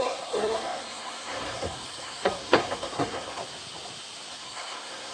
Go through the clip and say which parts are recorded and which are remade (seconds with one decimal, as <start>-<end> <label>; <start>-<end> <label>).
0.0-3.4 remade; 3.4-4.3 recorded; 4.3-5.1 remade